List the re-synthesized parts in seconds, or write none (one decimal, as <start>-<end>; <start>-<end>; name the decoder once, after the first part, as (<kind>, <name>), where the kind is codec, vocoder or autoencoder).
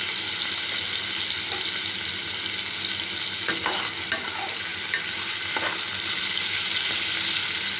none